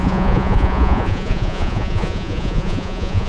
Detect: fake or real fake